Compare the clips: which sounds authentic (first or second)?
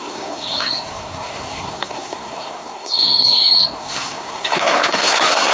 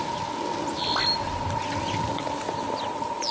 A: second